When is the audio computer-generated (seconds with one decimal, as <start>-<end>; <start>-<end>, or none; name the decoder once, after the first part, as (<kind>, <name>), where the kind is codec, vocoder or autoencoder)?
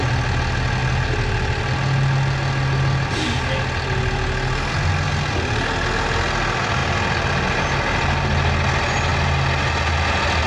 none